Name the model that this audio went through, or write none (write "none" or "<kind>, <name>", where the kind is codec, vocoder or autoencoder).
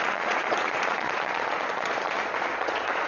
vocoder, Vocos